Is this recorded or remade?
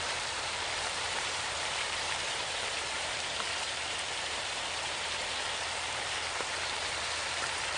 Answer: remade